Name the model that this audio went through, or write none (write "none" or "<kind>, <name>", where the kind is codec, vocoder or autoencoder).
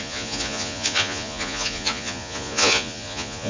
vocoder, Vocos